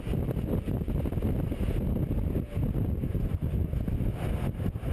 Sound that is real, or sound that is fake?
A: real